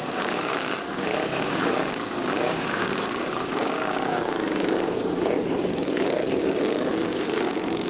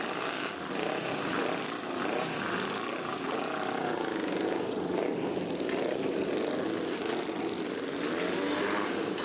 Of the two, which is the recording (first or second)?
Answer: second